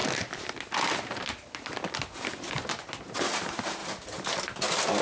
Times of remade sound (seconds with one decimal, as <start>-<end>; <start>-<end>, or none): none